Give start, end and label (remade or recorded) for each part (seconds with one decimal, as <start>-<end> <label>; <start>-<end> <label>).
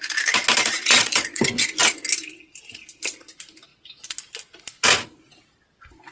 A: 0.0-0.8 recorded; 0.8-1.4 remade; 1.4-6.1 recorded